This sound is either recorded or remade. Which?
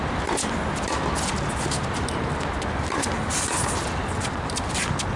recorded